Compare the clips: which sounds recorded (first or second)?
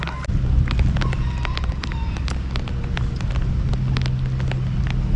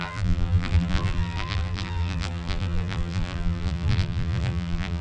first